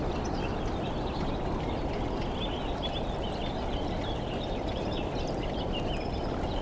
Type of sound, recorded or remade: recorded